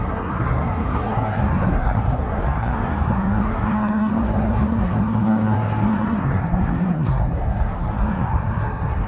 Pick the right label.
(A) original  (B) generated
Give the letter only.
B